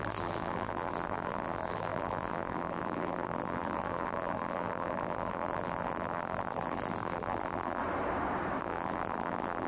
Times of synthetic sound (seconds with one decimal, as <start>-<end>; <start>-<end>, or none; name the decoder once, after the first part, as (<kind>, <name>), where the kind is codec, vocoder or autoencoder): 0.0-7.8 (vocoder, BigVGAN v2); 8.6-9.7